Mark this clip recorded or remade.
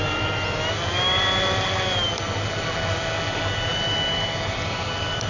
recorded